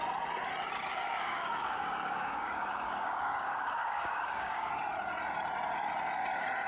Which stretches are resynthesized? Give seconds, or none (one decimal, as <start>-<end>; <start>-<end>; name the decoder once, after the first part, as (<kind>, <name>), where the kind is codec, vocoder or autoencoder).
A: 0.9-4.7 (codec, DAC)